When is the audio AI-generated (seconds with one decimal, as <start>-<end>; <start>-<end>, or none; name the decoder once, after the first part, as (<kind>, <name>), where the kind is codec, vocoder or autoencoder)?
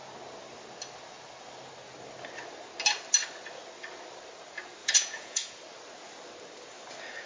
4.8-5.6 (vocoder, Vocos)